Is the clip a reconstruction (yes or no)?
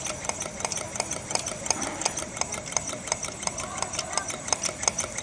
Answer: no